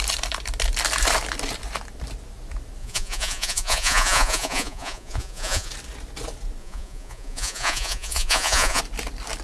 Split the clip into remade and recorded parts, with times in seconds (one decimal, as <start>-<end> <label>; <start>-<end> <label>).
0.0-2.8 recorded; 2.8-5.7 remade; 5.7-6.6 recorded; 6.6-8.8 remade; 8.8-9.4 recorded